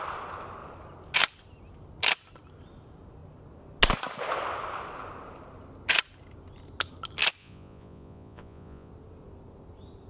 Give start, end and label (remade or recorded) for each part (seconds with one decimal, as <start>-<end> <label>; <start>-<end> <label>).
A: 0.0-7.4 recorded; 7.4-8.9 remade; 8.9-10.1 recorded